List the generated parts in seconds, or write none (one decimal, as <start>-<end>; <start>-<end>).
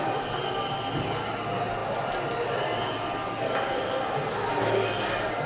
none